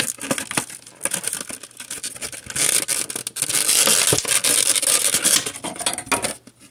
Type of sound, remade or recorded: recorded